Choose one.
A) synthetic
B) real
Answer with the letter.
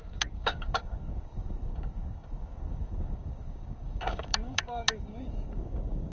A